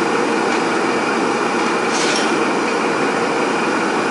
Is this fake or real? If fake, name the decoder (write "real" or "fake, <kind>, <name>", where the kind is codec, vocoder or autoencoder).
fake, vocoder, BigVGAN v2